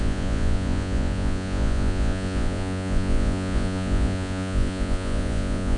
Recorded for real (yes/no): no